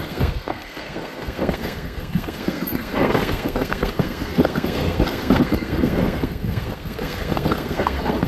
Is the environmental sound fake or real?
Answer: fake